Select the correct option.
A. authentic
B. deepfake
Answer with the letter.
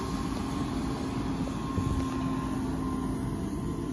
A